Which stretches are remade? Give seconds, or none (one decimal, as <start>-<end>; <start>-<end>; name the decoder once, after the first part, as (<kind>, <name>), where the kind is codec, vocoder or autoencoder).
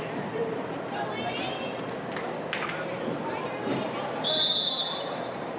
3.7-5.6 (vocoder, BigVGAN v2)